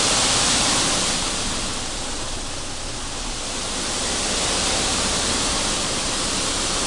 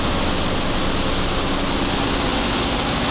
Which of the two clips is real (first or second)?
second